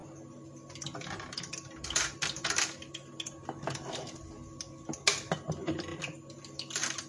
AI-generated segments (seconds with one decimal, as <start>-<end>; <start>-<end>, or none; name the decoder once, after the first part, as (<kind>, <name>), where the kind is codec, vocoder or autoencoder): none